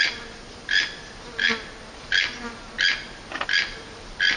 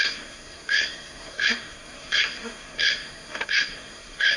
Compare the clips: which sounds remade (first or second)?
second